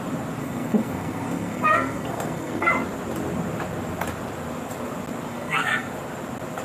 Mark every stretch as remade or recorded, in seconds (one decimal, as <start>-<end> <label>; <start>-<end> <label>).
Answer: 0.0-0.4 recorded; 0.4-2.7 remade; 2.7-5.3 recorded; 5.3-5.9 remade; 5.9-6.6 recorded